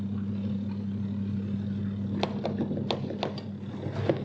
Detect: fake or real real